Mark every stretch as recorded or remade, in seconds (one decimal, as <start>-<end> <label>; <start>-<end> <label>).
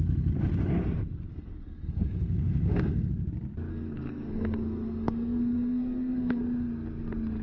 0.0-1.3 recorded; 1.3-3.1 remade; 3.1-3.7 recorded; 3.7-6.4 remade; 6.4-7.4 recorded